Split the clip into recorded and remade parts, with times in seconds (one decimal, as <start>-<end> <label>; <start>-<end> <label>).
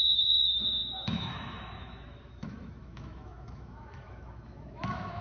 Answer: 0.0-5.2 remade